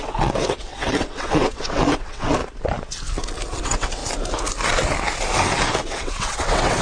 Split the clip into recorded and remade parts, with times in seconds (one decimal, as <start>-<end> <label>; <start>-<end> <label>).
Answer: 0.0-2.4 remade; 2.4-3.6 recorded; 3.6-4.0 remade; 4.0-5.8 recorded; 5.8-6.8 remade